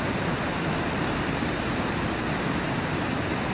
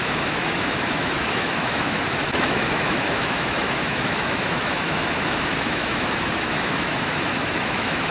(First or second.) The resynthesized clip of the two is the second